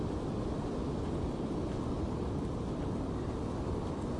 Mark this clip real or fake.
real